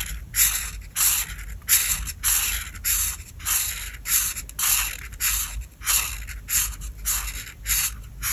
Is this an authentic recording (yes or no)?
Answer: yes